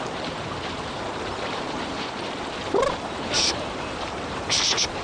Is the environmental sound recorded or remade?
remade